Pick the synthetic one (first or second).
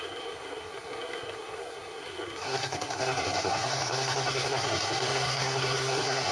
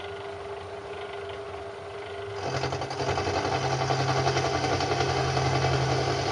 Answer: first